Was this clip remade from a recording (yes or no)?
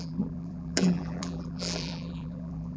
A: yes